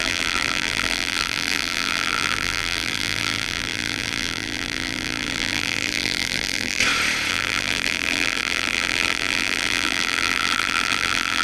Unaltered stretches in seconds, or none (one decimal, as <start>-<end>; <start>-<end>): 6.8-7.3